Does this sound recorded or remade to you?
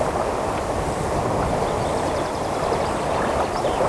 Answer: recorded